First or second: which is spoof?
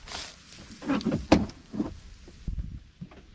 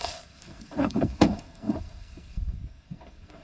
second